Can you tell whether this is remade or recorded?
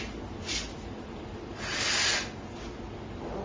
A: recorded